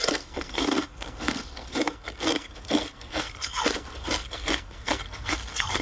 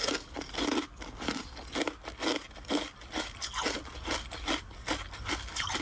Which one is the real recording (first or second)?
second